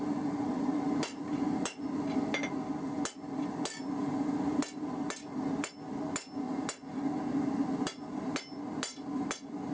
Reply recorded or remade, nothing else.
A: recorded